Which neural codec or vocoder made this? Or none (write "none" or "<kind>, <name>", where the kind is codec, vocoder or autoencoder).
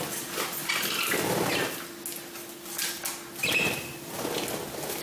none